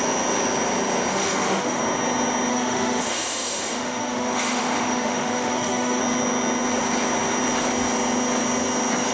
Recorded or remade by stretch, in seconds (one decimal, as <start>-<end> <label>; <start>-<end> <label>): 0.0-1.1 recorded; 1.1-1.8 remade; 1.8-2.5 recorded; 2.5-6.0 remade; 6.0-9.1 recorded